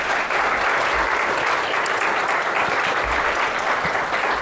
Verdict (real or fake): real